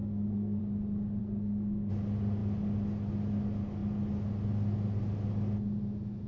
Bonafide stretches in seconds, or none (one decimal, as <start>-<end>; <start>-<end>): 0.6-1.2; 1.9-6.3